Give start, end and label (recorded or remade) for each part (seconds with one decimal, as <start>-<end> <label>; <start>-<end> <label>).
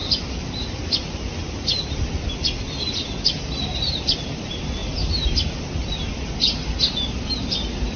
0.0-8.0 recorded